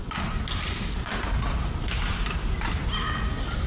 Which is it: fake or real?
real